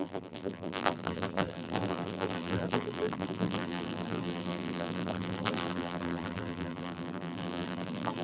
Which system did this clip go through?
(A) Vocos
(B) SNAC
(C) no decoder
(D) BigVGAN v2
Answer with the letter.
D